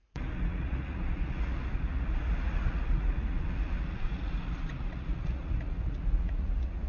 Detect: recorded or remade remade